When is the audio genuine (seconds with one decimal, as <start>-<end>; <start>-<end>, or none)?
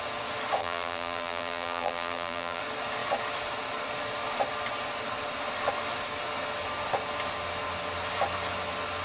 0.0-0.6; 2.6-9.0